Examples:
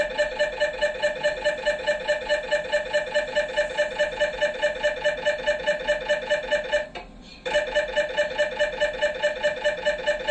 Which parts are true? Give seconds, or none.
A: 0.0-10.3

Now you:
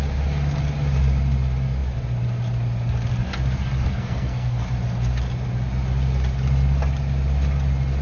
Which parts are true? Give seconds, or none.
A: 0.0-3.9; 4.6-8.0

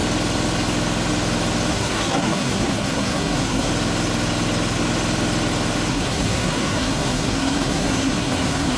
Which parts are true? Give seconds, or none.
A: 0.0-1.7; 3.7-5.9

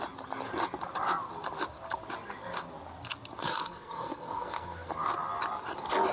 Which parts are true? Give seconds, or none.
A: 0.0-3.4; 4.9-6.1

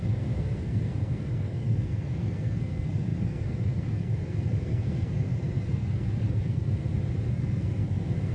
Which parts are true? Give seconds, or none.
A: 6.8-7.3

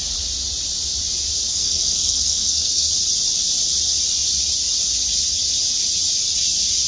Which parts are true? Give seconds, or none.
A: 0.0-1.5; 2.9-6.9